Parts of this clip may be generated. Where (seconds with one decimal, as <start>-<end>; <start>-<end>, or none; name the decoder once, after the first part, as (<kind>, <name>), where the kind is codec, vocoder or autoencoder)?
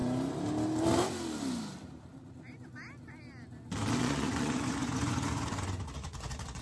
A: 4.0-6.6 (vocoder, Vocos)